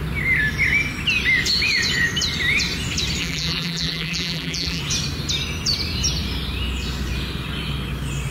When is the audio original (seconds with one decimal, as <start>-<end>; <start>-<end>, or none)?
0.0-3.2; 4.8-8.3